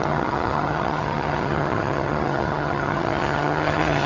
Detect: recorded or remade remade